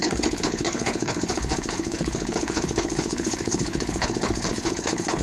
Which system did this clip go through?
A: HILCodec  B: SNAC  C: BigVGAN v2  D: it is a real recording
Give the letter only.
A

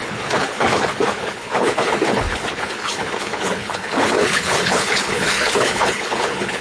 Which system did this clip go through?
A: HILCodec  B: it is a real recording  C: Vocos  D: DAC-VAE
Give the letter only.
A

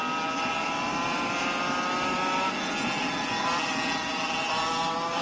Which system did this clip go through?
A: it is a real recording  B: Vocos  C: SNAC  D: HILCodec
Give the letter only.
A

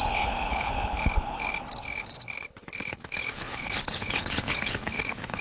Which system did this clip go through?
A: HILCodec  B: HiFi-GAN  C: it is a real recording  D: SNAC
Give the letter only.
A